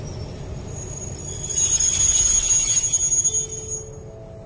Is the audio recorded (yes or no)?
yes